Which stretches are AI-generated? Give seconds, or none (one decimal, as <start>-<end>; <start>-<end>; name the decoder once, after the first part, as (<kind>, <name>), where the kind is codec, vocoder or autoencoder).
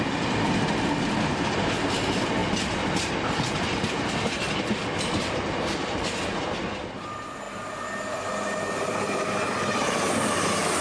none